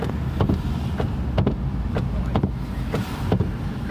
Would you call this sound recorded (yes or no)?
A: yes